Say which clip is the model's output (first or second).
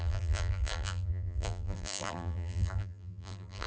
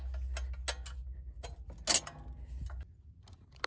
first